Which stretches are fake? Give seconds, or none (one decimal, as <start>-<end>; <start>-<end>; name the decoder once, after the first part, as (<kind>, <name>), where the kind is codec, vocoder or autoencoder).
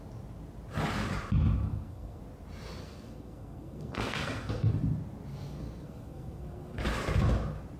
1.6-2.2 (codec, SNAC); 2.8-4.7; 5.3-6.8